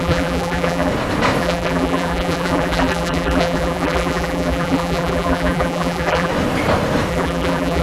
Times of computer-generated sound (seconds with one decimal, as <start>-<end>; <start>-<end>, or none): 0.0-0.9; 1.4-6.3; 7.1-7.8